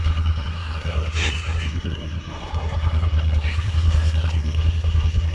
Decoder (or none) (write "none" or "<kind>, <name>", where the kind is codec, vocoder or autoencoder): codec, SNAC